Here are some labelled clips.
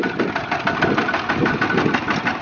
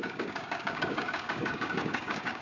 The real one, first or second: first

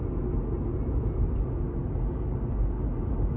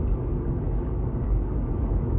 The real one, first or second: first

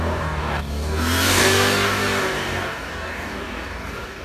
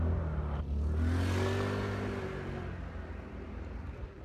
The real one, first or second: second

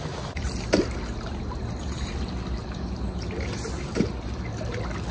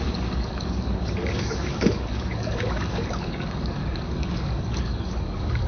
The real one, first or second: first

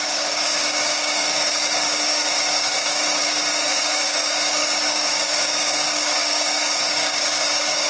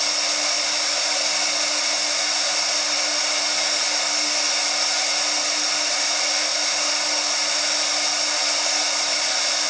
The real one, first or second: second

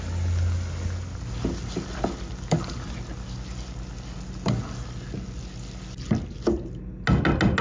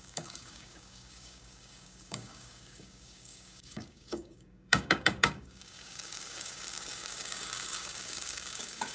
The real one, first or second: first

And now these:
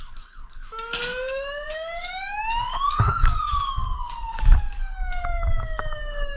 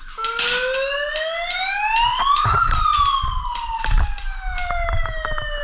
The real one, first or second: second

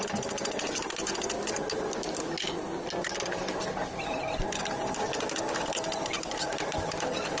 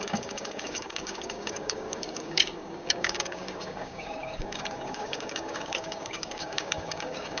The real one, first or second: first